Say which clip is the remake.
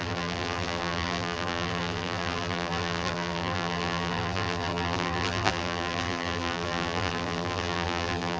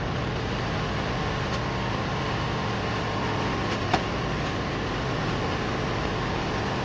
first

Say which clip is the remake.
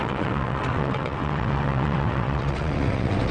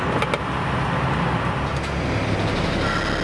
first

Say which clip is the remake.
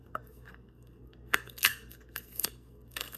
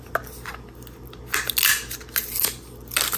first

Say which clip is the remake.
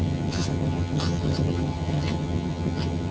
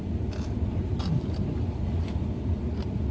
first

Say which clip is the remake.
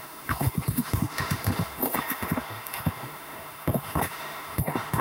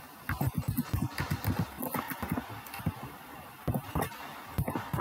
first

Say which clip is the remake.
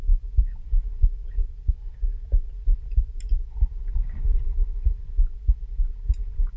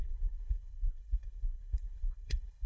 second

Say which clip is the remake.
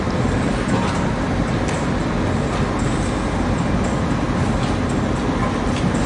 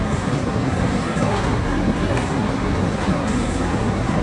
second